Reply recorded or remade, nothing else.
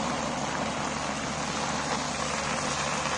recorded